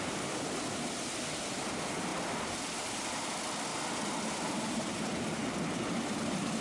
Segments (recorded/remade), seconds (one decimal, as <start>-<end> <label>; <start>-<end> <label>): 0.0-3.7 recorded; 3.7-6.6 remade

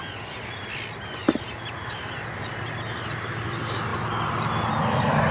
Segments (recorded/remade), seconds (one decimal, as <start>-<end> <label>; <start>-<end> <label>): 0.0-5.3 recorded

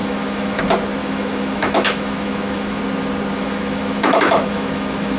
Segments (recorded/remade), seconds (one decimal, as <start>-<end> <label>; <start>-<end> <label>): 0.0-0.6 remade; 0.6-1.0 recorded; 1.0-2.8 remade; 2.8-3.3 recorded; 3.3-5.2 remade

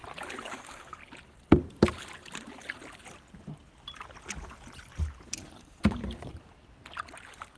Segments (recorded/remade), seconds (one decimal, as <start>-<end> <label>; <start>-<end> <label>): 0.0-0.5 recorded; 0.5-1.0 remade; 1.0-5.6 recorded; 5.6-6.0 remade; 6.0-7.6 recorded

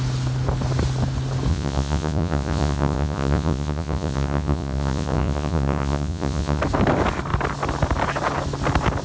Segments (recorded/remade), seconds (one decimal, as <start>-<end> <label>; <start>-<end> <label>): 0.0-1.5 recorded; 1.5-6.6 remade; 6.6-9.0 recorded

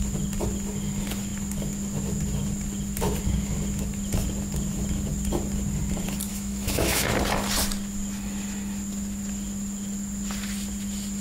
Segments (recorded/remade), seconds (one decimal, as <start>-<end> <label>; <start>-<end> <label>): 0.0-6.3 recorded; 6.3-7.1 remade; 7.1-11.2 recorded

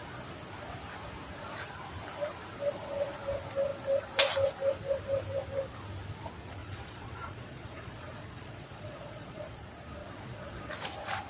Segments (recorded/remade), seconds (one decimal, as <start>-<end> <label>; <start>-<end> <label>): 0.0-6.6 recorded; 6.6-9.6 remade; 9.6-10.0 recorded; 10.0-10.7 remade; 10.7-11.3 recorded

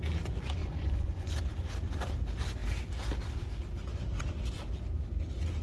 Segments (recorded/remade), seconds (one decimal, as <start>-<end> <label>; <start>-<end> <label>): 0.0-0.6 recorded; 0.6-1.3 remade; 1.3-5.6 recorded